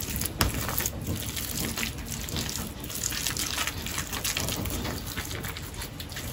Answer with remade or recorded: recorded